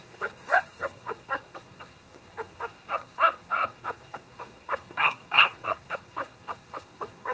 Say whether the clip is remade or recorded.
remade